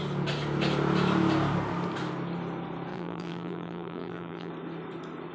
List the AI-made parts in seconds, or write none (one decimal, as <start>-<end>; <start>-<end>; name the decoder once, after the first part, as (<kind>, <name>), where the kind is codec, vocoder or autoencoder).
2.9-4.5 (vocoder, BigVGAN v2)